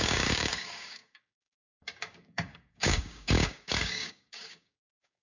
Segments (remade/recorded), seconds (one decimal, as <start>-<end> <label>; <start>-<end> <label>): 0.0-5.2 remade